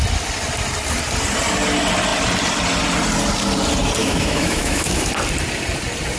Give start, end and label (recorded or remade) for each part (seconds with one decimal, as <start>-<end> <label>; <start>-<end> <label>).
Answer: 0.0-4.0 recorded; 4.0-5.1 remade; 5.1-6.2 recorded